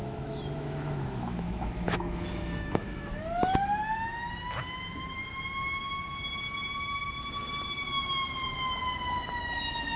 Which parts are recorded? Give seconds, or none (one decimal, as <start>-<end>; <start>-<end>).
3.1-10.0